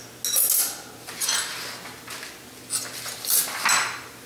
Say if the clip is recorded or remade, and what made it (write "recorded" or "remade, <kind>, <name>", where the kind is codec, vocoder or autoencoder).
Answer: recorded